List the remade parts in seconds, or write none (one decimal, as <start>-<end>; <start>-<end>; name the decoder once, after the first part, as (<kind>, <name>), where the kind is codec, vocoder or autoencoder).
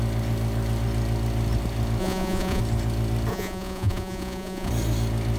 2.0-2.6 (vocoder, Vocos); 3.3-4.7